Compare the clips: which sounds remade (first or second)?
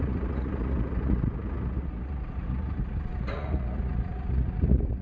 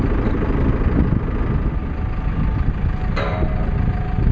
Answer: first